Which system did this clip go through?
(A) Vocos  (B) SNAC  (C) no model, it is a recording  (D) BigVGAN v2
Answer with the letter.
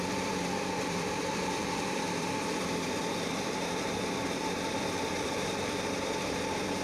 D